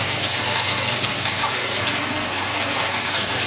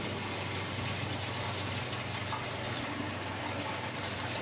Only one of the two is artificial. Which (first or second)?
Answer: first